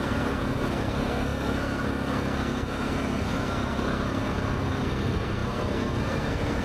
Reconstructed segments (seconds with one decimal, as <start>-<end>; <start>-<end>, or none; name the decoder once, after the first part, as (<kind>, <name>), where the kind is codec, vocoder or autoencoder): 0.0-6.6 (codec, SNAC)